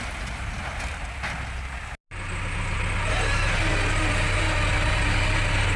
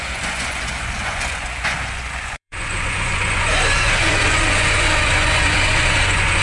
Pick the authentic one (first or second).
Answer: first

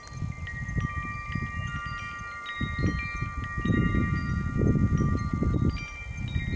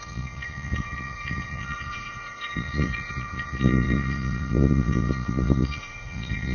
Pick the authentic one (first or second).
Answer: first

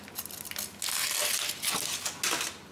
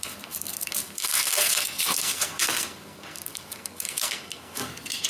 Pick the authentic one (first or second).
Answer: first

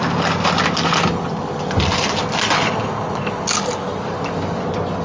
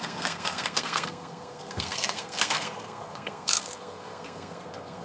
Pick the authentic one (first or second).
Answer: first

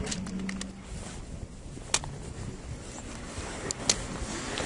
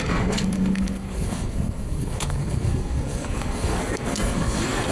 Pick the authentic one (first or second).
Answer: first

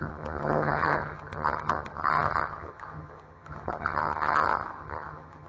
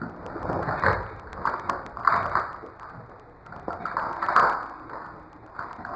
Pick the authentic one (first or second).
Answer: second